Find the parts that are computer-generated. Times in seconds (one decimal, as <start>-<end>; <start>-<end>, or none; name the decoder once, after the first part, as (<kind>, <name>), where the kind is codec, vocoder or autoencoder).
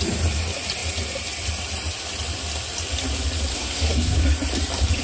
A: 3.5-4.2 (codec, SNAC)